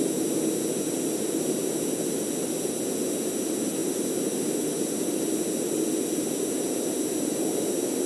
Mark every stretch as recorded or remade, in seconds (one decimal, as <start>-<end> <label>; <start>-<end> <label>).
0.0-8.1 recorded